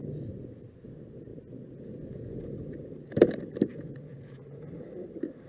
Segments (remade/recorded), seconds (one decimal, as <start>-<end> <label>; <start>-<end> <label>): 0.0-0.8 recorded; 0.8-4.1 remade; 4.1-4.7 recorded; 4.7-5.5 remade